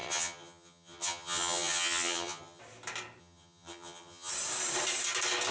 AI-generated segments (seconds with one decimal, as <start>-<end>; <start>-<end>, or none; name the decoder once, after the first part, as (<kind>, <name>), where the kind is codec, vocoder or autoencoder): 0.0-2.6 (vocoder, HiFi-GAN); 3.2-4.3